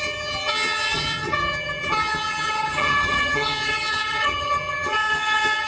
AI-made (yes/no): yes